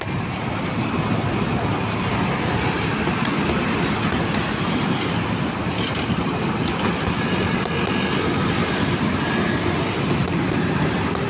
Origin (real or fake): real